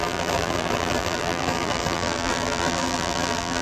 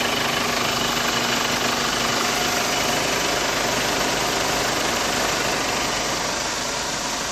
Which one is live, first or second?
second